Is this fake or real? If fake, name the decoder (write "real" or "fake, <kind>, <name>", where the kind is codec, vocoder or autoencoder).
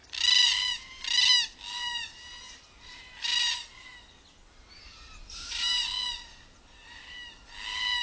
real